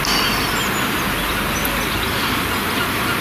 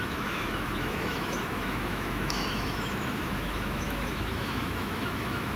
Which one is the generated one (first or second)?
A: second